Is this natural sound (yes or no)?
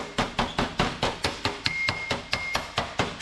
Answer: yes